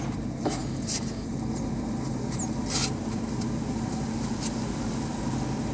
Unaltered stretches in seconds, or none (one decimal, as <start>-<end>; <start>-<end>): 0.0-0.6; 1.3-2.8; 3.7-5.7